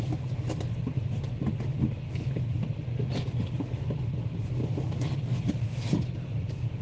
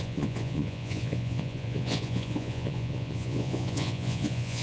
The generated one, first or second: second